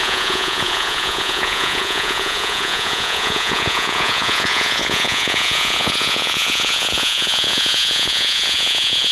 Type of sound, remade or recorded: remade